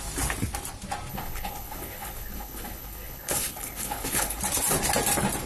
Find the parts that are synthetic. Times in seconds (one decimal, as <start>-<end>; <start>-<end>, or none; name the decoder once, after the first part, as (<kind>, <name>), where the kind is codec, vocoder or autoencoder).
1.1-4.4 (codec, HILCodec)